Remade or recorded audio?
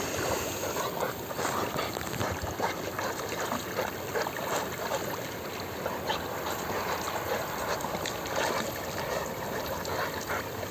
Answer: recorded